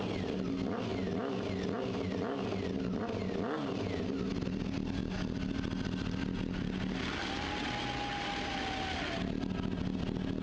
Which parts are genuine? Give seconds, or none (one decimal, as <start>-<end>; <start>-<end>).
0.0-10.4